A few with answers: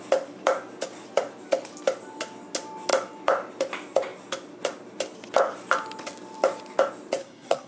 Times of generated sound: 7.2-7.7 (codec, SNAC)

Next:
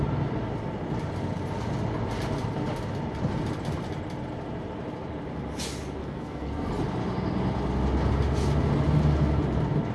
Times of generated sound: 6.0-6.7 (codec, SNAC)

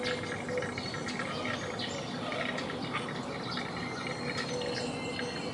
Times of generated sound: none

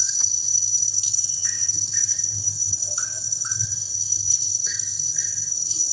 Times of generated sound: 0.0-5.9 (codec, SNAC)